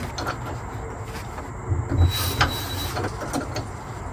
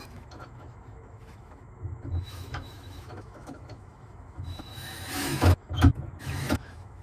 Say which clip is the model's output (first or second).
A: second